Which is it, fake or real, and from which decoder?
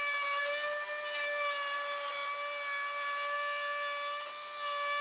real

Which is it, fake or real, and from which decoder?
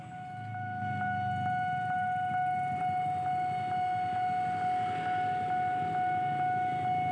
real